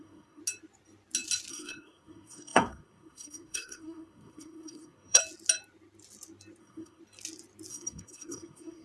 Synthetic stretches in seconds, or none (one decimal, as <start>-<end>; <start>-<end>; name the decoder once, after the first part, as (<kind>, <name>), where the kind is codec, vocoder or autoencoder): 0.0-0.4 (codec, SNAC); 1.5-5.2; 6.6-7.0; 7.7-8.8